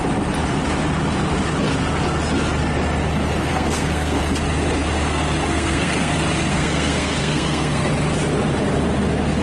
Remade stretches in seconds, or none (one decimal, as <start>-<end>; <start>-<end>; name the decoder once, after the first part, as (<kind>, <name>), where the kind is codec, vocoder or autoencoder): 3.5-4.2 (codec, SNAC); 5.5-6.1; 6.5-7.9